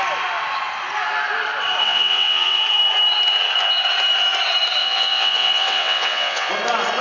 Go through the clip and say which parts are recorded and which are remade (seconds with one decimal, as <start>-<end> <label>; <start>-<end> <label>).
0.0-1.8 recorded; 1.8-2.6 remade; 2.6-4.8 recorded; 4.8-6.5 remade; 6.5-7.0 recorded